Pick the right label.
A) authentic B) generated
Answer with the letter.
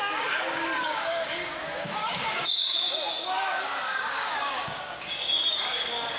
B